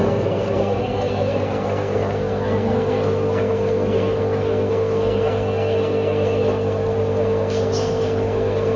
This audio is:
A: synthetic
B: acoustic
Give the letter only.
A